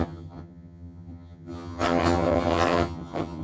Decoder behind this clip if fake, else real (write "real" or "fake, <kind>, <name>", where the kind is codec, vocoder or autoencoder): fake, vocoder, HiFi-GAN